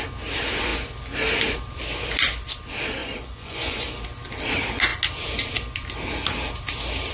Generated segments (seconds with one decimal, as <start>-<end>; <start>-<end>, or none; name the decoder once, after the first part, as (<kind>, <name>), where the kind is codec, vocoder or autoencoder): 3.0-3.9 (vocoder, Vocos)